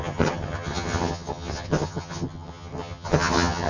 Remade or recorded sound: remade